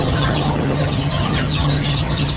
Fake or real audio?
fake